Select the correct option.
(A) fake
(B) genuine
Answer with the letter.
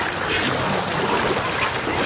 B